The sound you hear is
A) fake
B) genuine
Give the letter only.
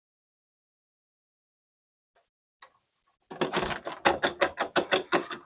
B